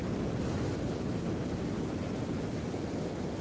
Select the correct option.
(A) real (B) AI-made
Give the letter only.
A